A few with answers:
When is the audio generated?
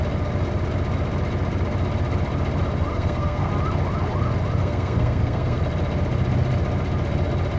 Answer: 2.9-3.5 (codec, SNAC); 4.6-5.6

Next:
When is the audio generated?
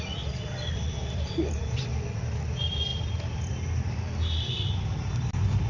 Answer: none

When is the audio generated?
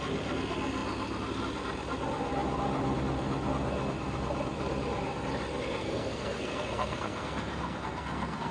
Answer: 5.8-8.5 (codec, SNAC)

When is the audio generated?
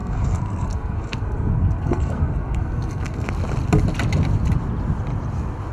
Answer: 0.0-3.3 (codec, SNAC)